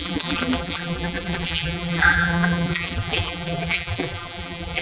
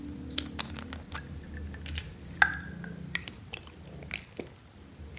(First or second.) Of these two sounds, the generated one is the first